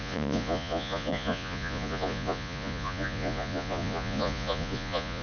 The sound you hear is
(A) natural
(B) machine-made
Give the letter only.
B